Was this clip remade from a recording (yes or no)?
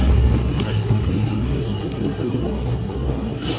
yes